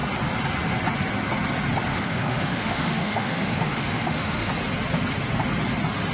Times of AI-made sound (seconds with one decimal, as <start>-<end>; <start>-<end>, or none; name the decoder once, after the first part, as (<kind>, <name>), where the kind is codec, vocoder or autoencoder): 1.9-4.5 (autoencoder, DAC-VAE)